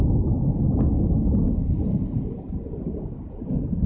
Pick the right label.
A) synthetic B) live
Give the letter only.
B